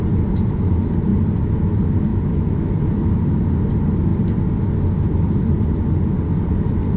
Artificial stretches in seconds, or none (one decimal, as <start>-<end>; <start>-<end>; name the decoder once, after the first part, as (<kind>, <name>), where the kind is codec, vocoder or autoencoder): 2.1-2.7 (autoencoder, DAC-VAE)